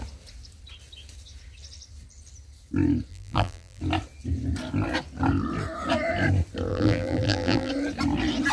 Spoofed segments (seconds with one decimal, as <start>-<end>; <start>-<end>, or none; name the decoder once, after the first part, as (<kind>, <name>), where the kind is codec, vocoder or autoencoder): 3.1-3.8 (vocoder, BigVGAN v2); 6.7-7.7